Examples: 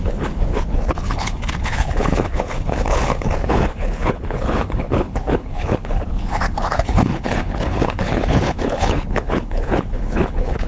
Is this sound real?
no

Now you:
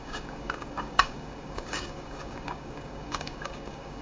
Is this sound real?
no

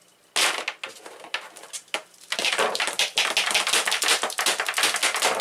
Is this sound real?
yes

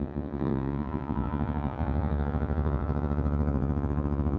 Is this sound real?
no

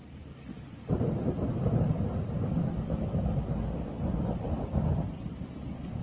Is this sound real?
yes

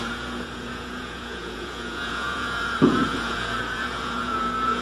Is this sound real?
no